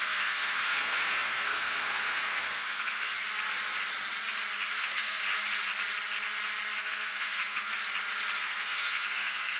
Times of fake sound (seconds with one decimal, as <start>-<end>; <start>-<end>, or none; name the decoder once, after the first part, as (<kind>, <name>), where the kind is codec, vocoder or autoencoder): 0.0-3.1 (codec, SNAC); 4.7-5.2; 6.8-7.7; 8.4-9.6